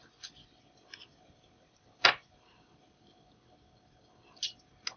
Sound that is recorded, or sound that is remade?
recorded